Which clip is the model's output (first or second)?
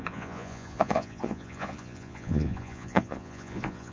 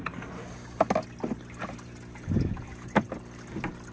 first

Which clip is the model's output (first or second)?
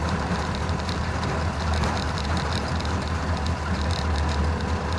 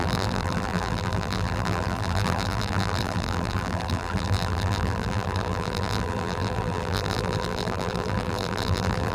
second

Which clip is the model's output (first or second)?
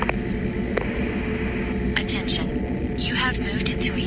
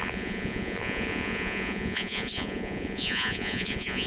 second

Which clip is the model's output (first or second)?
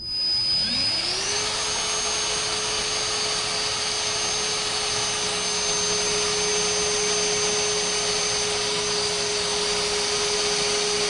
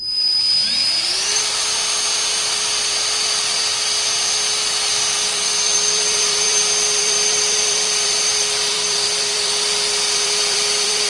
second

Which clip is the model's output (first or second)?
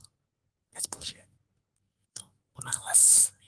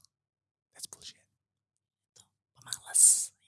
first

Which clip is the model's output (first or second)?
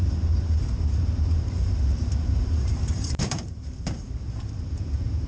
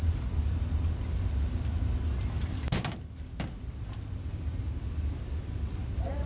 first